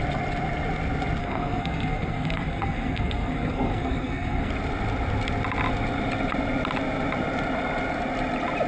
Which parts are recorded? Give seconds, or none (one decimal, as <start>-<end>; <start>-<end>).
0.0-1.2; 4.5-8.7